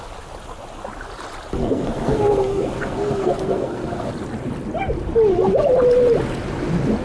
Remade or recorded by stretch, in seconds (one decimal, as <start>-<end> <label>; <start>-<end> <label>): 0.0-1.6 recorded; 1.6-4.1 remade; 4.1-7.0 recorded